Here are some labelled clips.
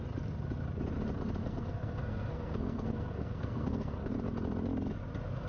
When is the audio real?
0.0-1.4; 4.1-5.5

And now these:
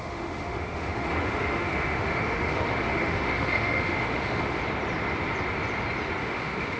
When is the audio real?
4.6-6.2

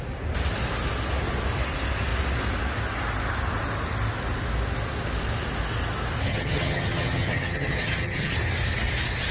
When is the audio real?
0.0-6.3; 8.3-9.3

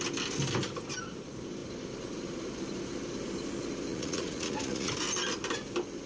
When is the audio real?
0.0-3.9; 4.9-6.1

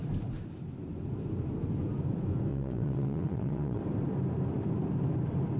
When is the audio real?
0.0-2.5; 3.8-5.6

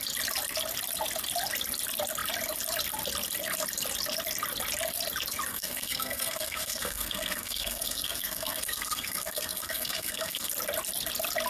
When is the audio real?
0.0-5.5; 10.5-11.5

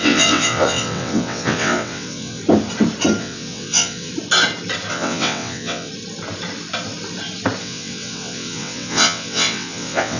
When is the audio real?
2.4-3.2; 4.1-4.9; 5.9-7.6

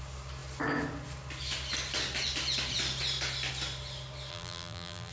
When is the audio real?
0.0-4.3